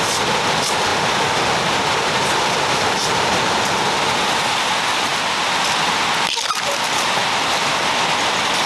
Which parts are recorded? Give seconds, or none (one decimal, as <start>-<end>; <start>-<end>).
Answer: 0.0-8.7